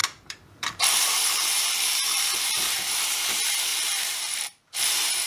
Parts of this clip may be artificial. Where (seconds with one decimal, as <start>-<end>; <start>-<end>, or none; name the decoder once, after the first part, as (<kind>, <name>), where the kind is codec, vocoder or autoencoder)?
0.0-5.3 (vocoder, BigVGAN v2)